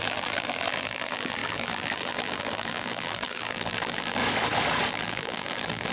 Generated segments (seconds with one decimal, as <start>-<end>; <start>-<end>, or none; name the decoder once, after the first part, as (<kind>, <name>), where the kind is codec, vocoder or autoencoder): 0.0-4.2 (vocoder, BigVGAN v2); 4.9-5.9